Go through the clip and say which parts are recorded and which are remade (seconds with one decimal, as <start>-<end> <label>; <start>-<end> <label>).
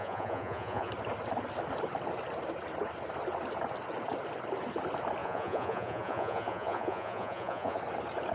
0.0-0.9 remade; 0.9-5.2 recorded; 5.2-7.8 remade; 7.8-8.3 recorded